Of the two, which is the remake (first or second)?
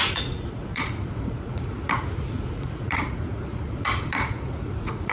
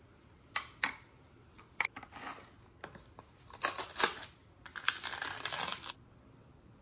first